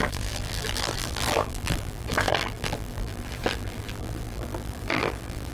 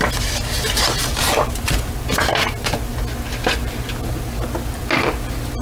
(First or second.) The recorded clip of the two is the second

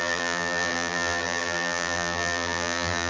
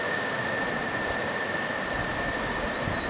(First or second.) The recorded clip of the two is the second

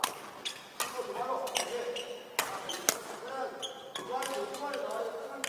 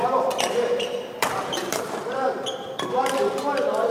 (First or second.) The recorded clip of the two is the first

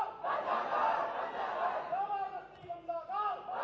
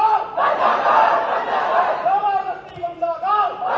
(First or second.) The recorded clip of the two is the first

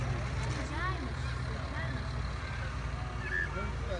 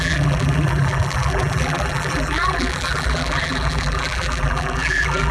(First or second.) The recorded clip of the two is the first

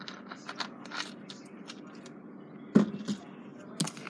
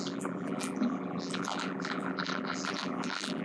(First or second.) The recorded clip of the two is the first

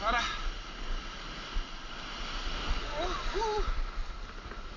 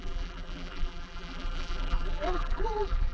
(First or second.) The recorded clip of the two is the first